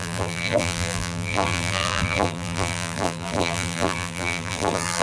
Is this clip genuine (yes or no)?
no